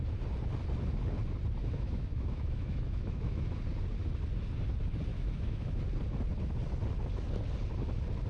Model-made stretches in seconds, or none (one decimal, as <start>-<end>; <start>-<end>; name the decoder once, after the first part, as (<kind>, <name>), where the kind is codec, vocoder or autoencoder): 1.6-3.6 (autoencoder, DAC-VAE); 5.1-5.8